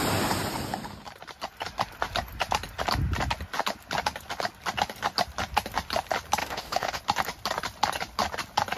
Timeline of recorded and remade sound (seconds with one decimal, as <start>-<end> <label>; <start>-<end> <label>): 0.0-6.4 recorded; 6.4-7.0 remade; 7.0-8.8 recorded